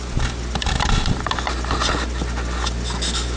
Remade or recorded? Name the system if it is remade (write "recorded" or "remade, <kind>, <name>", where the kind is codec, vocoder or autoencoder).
recorded